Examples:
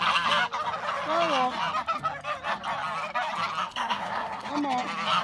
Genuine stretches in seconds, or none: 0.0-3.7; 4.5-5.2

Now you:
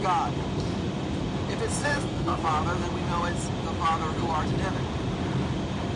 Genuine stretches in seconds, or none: 0.0-1.8; 2.4-6.0

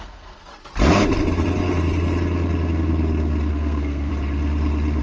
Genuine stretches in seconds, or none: 0.5-3.5; 4.1-5.0